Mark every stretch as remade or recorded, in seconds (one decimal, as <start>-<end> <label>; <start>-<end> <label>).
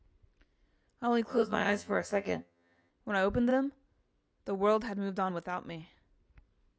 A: 0.0-1.3 recorded; 1.3-2.9 remade; 2.9-6.8 recorded